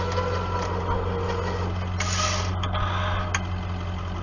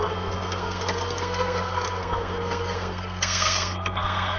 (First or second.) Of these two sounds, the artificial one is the second